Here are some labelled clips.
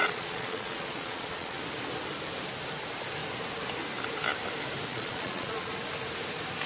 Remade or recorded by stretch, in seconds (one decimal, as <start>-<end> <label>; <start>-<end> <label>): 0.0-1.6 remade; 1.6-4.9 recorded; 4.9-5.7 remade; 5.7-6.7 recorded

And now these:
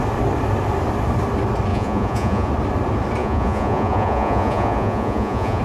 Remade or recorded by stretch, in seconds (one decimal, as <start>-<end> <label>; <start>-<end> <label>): 0.0-1.7 recorded; 1.7-2.5 remade; 2.5-3.2 recorded; 3.2-5.6 remade

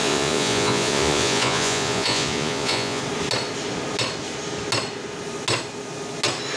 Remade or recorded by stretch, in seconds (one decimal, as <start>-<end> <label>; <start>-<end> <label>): 0.0-3.0 remade; 3.0-6.6 recorded

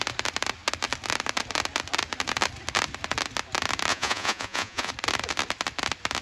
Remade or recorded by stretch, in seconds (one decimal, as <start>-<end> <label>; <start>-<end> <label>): 0.0-3.9 recorded; 3.9-4.9 remade; 4.9-6.2 recorded

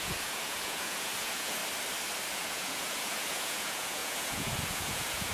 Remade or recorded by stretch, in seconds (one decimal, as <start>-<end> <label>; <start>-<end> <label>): 0.0-1.6 remade; 1.6-2.3 recorded; 2.3-5.3 remade

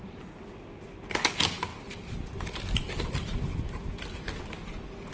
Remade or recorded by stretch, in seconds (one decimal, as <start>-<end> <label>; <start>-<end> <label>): 0.0-5.1 recorded

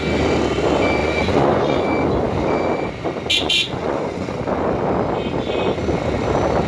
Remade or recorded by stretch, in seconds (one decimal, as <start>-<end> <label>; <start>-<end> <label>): 0.0-1.0 recorded; 1.0-1.8 remade; 1.8-3.3 recorded; 3.3-4.4 remade; 4.4-6.7 recorded